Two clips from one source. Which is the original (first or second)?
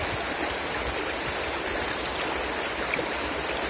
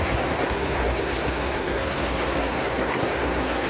first